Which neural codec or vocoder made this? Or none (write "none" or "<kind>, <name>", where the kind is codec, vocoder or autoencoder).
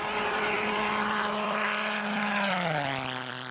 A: vocoder, BigVGAN v2